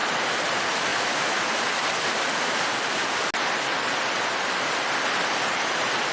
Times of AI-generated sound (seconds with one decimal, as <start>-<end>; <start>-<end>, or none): 0.5-0.9; 4.5-6.1